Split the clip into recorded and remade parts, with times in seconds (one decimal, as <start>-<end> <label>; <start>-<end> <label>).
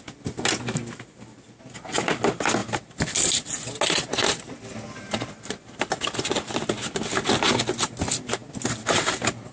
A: 0.0-9.5 recorded